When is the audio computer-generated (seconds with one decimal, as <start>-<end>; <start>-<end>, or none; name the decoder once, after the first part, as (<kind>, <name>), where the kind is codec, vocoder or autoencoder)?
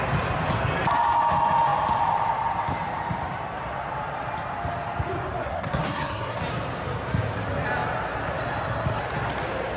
5.4-6.4 (codec, SNAC)